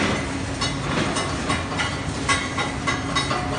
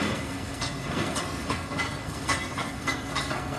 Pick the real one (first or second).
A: first